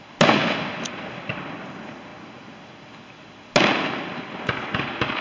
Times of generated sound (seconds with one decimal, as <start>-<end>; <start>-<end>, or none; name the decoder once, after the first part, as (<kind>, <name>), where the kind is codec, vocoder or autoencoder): none